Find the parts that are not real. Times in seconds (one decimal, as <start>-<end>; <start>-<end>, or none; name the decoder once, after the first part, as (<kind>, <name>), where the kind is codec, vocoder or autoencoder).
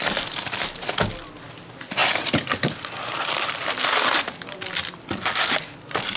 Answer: none